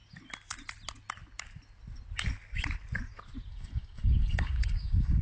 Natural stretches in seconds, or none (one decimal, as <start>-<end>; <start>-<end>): 0.0-3.5